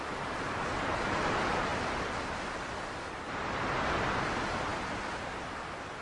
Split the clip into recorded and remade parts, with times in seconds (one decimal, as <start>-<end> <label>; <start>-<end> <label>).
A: 0.0-1.7 recorded; 1.7-3.2 remade; 3.2-6.0 recorded